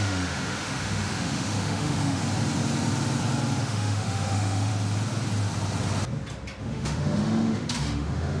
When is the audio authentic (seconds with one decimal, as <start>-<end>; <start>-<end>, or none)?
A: 2.2-3.6; 4.7-6.6

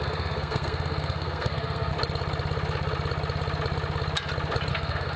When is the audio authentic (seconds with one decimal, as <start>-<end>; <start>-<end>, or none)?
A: 1.9-4.7

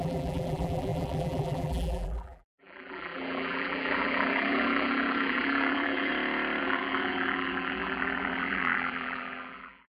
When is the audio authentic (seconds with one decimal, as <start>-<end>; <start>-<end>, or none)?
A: 6.1-6.6